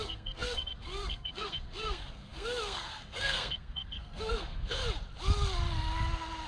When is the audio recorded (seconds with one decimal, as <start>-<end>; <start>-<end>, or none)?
4.8-6.5